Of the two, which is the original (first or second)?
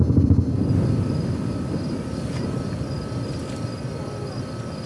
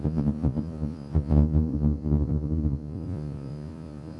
first